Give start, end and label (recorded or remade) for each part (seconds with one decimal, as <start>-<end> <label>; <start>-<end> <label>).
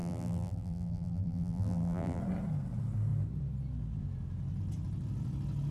0.0-2.2 remade; 2.2-5.7 recorded